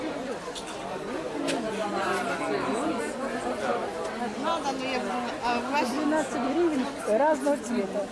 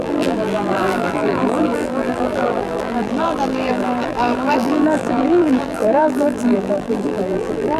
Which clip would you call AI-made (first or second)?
second